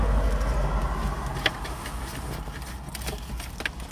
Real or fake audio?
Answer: real